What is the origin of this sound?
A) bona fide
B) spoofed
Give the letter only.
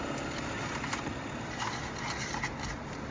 A